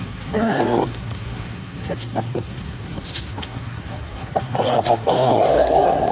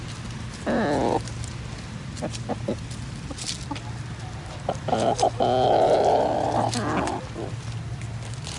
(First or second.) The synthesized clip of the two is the first